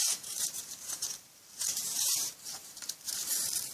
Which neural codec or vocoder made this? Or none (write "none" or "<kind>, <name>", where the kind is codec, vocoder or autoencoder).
vocoder, BigVGAN v2